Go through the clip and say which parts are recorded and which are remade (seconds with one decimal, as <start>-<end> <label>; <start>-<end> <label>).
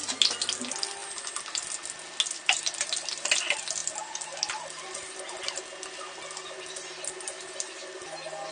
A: 0.0-8.5 recorded